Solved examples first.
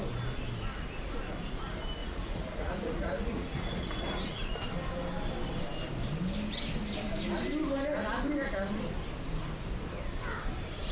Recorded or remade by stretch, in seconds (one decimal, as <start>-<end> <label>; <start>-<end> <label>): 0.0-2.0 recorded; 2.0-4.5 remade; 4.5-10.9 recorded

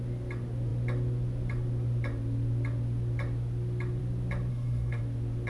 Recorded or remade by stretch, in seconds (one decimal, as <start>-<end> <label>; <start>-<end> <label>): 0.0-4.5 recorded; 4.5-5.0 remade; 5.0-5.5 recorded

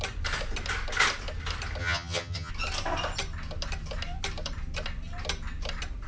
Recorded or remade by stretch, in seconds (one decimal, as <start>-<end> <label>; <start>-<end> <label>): 0.0-1.8 recorded; 1.8-2.5 remade; 2.5-6.1 recorded